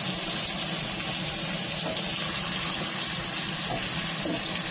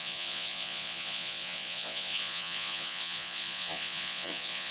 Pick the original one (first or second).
first